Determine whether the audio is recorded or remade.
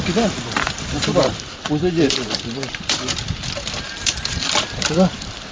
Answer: remade